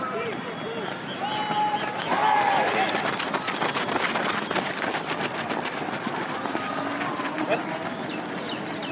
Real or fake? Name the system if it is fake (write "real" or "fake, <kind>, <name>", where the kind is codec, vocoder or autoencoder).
real